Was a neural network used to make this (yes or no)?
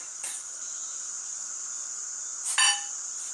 no